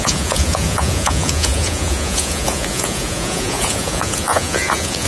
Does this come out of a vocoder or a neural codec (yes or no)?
yes